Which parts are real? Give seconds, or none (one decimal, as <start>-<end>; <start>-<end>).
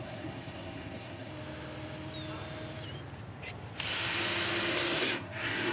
1.3-4.7